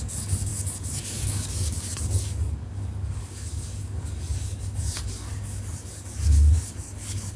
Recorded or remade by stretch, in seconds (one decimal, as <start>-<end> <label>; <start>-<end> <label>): 0.0-7.4 remade